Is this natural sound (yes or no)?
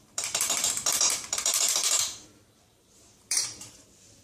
no